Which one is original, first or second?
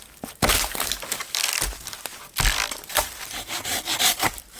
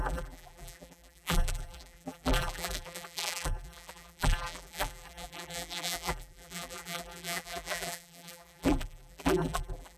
first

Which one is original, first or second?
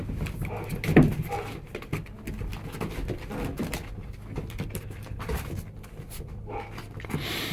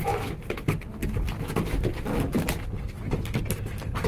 first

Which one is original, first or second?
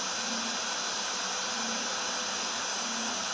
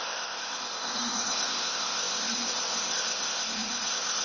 first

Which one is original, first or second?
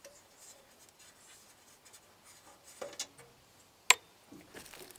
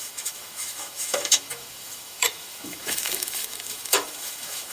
first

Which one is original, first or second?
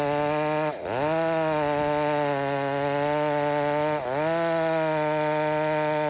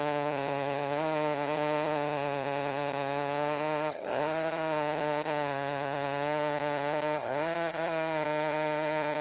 first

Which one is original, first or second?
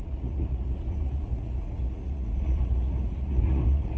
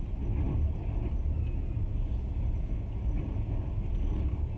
second